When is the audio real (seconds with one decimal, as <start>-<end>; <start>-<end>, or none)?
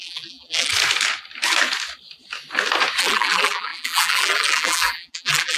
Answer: 0.7-3.0